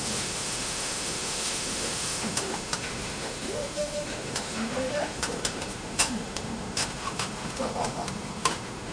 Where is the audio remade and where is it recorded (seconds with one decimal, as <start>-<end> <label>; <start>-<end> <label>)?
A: 0.0-8.9 remade